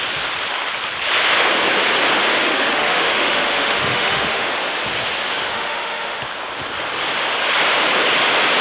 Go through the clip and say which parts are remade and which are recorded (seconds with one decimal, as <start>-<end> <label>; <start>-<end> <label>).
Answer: 0.0-2.4 recorded; 2.4-4.5 remade; 4.5-5.5 recorded; 5.5-6.2 remade; 6.2-8.6 recorded